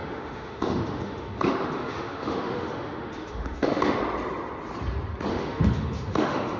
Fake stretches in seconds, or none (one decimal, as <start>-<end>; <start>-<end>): 0.0-4.0; 5.3-6.6